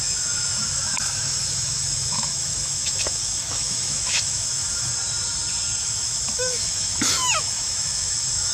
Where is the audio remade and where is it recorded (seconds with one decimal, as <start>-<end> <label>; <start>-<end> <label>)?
0.0-4.9 remade; 4.9-5.8 recorded; 5.8-8.5 remade

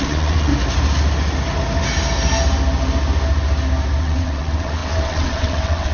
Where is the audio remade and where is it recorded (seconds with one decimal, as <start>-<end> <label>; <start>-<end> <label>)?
0.0-0.5 remade; 0.5-4.0 recorded; 4.0-5.9 remade